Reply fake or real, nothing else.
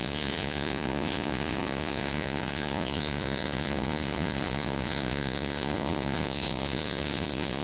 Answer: fake